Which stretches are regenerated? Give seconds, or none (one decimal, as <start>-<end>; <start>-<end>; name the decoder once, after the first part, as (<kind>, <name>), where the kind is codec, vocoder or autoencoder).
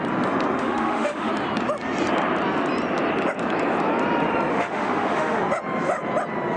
0.6-1.3 (autoencoder, DAC-VAE); 4.5-5.4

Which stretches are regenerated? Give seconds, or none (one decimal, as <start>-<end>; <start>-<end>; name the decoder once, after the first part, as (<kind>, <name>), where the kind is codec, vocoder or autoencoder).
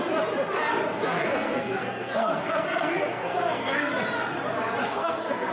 0.9-3.9 (codec, SNAC); 4.8-5.5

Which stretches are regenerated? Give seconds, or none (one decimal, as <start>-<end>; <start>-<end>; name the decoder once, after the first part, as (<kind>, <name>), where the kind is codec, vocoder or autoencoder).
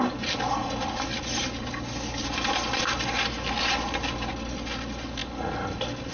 none